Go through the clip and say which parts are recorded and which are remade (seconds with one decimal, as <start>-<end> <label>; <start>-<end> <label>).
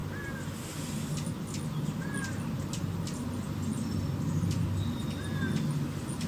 0.0-6.3 recorded